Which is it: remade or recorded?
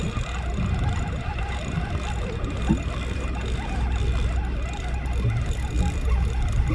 recorded